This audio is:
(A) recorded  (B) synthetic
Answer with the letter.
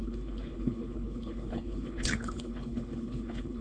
B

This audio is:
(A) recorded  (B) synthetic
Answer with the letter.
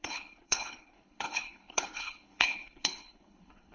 B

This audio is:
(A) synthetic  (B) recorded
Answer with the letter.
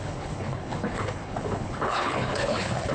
A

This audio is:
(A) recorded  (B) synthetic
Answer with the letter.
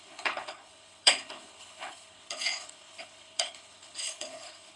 B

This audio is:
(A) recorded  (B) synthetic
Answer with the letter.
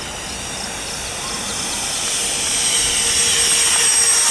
A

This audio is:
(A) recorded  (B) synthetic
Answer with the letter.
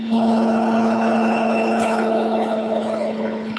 B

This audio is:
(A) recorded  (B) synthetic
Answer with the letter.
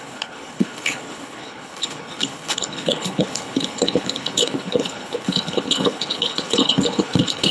B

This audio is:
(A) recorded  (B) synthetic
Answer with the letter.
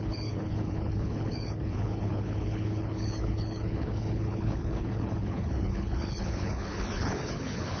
B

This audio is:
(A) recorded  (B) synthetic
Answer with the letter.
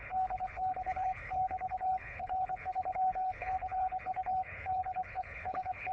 B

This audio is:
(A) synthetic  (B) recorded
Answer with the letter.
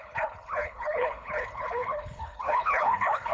A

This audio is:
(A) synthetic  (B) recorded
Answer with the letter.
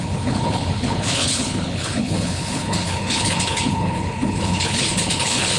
A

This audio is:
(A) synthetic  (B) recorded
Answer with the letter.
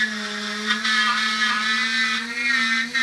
B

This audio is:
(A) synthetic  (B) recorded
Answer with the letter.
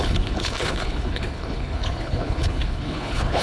A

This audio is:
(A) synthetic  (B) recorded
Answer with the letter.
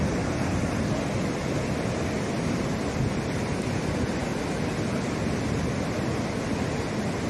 B